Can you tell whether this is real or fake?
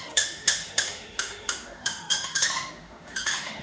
fake